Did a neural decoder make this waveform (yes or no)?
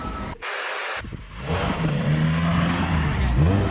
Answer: no